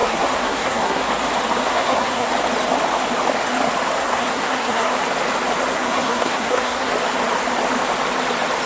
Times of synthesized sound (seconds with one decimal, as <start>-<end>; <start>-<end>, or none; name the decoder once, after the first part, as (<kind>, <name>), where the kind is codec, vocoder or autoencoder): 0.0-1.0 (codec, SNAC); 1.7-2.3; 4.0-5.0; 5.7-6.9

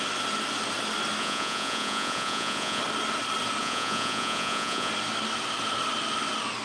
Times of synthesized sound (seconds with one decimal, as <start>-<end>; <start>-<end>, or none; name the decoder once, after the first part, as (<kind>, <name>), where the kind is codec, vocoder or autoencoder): 1.2-2.8 (vocoder, Vocos); 3.6-4.9

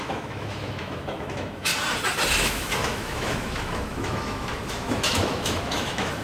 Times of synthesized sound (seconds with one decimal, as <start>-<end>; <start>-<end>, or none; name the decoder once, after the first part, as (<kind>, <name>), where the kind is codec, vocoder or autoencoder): 0.0-1.7 (autoencoder, DAC-VAE); 2.4-6.2